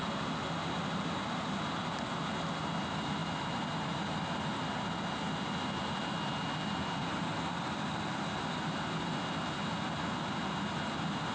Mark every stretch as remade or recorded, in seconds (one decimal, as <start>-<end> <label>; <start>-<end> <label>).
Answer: 0.0-11.3 recorded